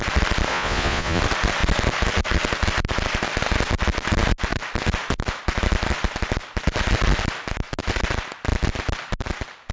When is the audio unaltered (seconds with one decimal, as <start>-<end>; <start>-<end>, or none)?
0.0-0.5; 1.2-9.7